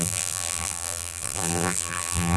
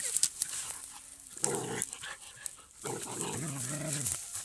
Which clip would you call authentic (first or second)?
second